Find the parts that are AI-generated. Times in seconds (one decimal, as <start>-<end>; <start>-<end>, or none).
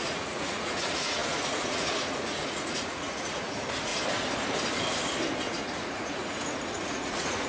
0.0-3.9; 5.5-7.5